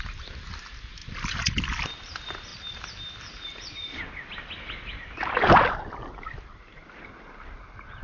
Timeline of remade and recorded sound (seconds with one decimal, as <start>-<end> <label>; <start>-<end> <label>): 0.0-1.0 recorded; 1.0-1.8 remade; 1.8-8.0 recorded